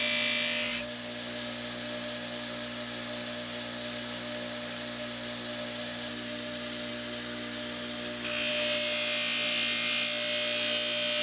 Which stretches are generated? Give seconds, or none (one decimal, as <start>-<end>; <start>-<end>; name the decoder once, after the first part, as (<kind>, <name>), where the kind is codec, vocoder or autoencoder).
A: none